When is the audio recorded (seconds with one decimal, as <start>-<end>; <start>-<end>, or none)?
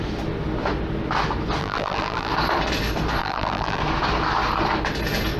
0.0-1.6; 2.3-3.2; 3.8-5.4